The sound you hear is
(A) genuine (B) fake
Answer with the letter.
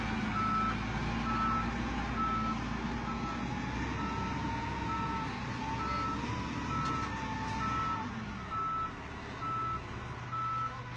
A